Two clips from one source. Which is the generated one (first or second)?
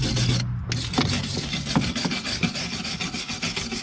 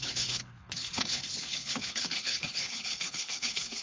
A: second